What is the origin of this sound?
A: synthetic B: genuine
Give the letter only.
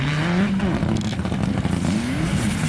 B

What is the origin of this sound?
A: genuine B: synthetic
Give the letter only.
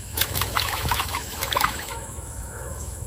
B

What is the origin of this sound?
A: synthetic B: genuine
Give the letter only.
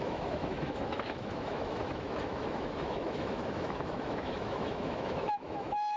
A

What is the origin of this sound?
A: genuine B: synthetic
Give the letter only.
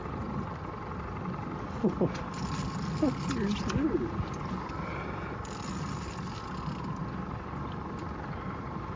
A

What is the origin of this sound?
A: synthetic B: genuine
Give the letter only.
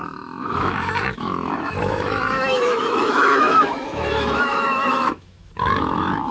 A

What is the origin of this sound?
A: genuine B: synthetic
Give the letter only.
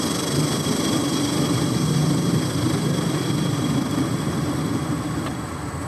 A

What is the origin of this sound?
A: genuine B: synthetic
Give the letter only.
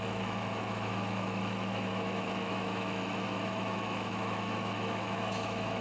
B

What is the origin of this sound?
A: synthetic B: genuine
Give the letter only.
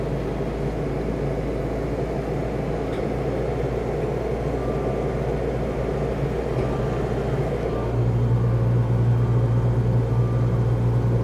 B